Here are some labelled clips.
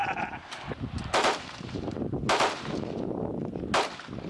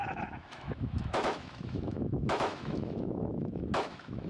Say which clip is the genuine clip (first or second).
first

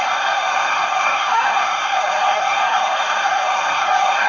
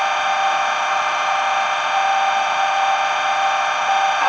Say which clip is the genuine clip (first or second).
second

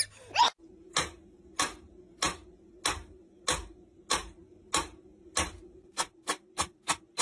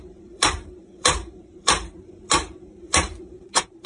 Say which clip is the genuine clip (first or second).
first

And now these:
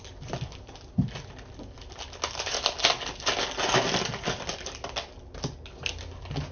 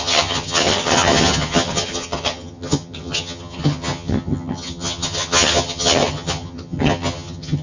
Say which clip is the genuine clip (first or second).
first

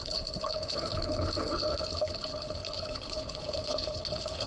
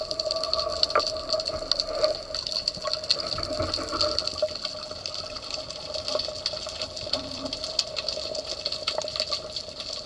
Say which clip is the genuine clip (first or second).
second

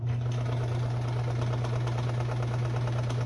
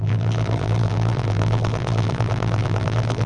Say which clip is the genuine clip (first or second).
first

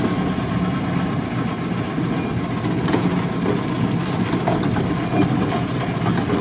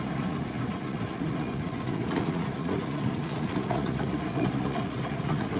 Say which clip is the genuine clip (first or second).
first